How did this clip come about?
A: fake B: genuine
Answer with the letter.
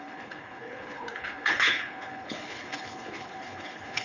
A